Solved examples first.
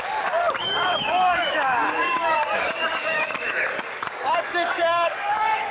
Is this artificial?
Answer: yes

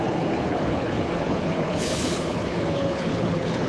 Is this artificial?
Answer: yes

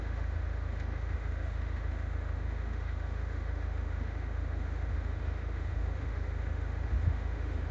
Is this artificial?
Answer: yes